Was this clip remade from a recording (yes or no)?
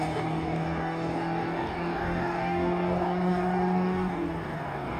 yes